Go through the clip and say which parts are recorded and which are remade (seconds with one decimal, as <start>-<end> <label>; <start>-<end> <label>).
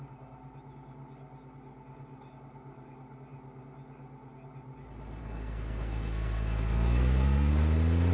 0.0-5.2 recorded; 5.2-7.5 remade; 7.5-8.1 recorded